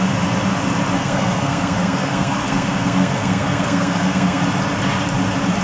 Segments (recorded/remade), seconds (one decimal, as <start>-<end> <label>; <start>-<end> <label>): 0.0-1.0 recorded; 1.0-4.4 remade; 4.4-5.6 recorded